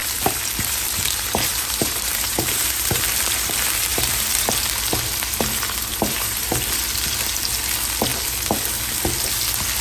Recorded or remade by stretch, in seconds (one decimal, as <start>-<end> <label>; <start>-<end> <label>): 0.0-3.0 remade; 3.0-3.9 recorded; 3.9-4.5 remade; 4.5-5.9 recorded; 5.9-6.6 remade; 6.6-9.8 recorded